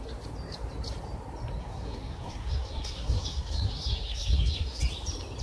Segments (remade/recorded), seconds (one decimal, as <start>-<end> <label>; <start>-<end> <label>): 0.0-1.6 recorded; 1.6-4.8 remade; 4.8-5.4 recorded